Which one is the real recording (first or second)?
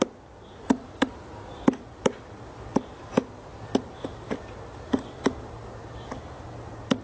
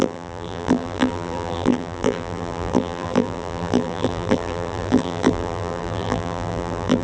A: first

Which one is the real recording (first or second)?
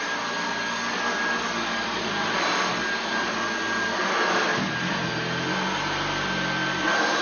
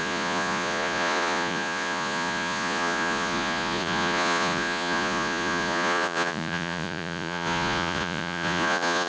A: first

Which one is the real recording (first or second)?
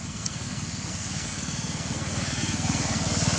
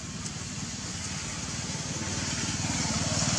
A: second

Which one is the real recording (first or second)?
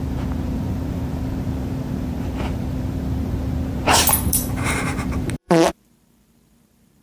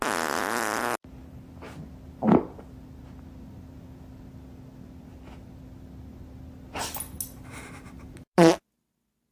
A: second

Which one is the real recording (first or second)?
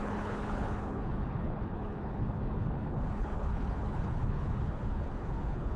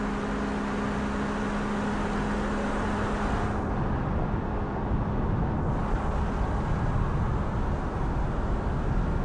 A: second